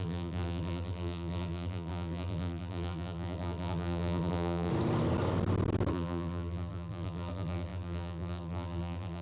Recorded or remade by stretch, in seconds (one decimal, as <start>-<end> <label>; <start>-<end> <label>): 0.0-4.7 remade; 4.7-5.9 recorded; 5.9-9.2 remade